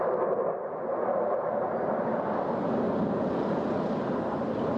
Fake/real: real